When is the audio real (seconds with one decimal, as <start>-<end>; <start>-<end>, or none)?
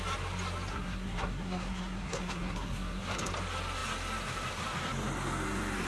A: 0.0-0.7; 3.3-5.9